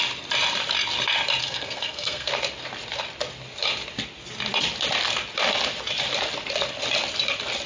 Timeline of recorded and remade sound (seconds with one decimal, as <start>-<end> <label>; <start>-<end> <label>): 0.0-1.4 recorded; 1.4-2.3 remade; 2.3-7.7 recorded